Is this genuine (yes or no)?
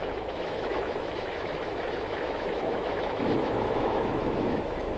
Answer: no